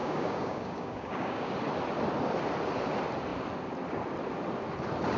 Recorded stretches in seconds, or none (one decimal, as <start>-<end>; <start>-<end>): 1.5-5.2